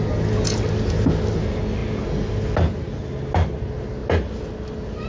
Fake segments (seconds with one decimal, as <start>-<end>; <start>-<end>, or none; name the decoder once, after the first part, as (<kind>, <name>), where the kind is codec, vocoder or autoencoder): none